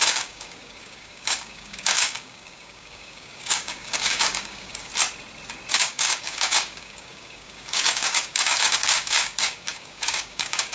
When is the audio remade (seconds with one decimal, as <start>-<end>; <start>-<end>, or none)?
0.0-4.9; 5.7-10.7